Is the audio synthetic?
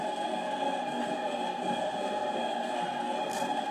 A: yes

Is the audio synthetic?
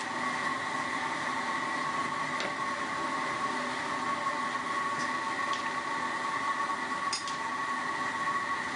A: no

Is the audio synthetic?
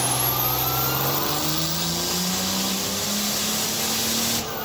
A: no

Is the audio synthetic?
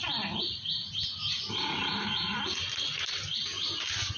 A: no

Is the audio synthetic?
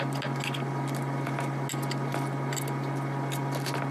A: no